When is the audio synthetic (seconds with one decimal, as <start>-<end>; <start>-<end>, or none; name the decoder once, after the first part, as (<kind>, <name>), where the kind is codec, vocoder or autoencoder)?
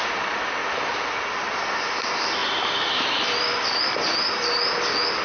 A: 0.6-1.2 (vocoder, BigVGAN v2); 2.4-3.8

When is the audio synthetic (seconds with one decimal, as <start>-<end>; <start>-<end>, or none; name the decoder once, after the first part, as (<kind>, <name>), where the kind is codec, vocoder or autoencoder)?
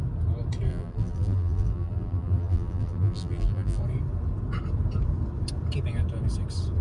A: 0.7-3.8 (vocoder, BigVGAN v2)